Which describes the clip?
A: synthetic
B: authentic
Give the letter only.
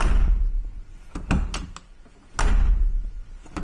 B